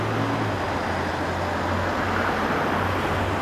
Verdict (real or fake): real